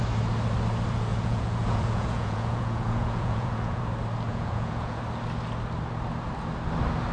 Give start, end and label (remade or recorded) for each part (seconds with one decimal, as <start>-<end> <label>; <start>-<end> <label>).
0.0-1.1 recorded; 1.1-3.8 remade; 3.8-4.3 recorded; 4.3-5.0 remade; 5.0-7.1 recorded